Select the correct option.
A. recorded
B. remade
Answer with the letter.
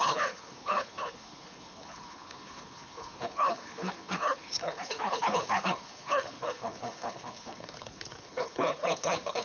B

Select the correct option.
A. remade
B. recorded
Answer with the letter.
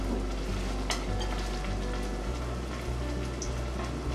B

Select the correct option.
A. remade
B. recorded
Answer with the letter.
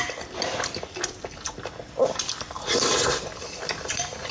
A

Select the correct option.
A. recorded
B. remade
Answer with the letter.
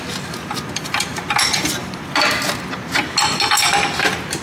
A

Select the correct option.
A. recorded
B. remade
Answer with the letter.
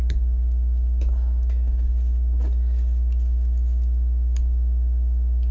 A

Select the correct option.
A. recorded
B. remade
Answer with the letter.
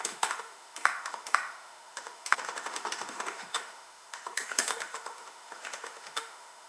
B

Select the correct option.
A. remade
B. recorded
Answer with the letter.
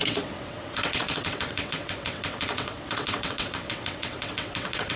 A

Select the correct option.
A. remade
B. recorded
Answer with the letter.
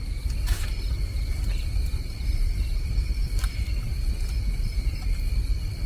B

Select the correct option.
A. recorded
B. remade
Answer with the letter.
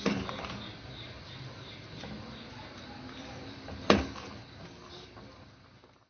A